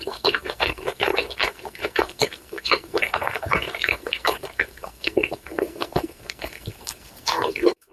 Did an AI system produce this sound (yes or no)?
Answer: yes